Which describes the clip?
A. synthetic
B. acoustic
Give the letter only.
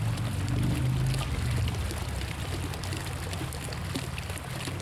B